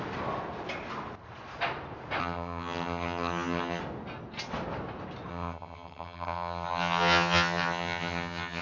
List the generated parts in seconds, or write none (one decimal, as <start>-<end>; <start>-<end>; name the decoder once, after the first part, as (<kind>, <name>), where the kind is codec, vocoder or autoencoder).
2.2-3.8 (vocoder, HiFi-GAN); 5.3-8.6